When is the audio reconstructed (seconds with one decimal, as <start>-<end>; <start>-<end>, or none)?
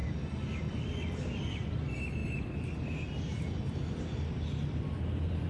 none